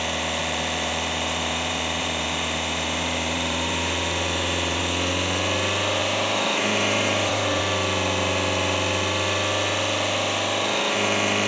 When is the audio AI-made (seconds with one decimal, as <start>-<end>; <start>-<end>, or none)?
0.4-4.8; 6.0-7.6